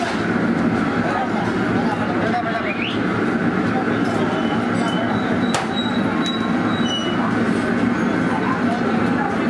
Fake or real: real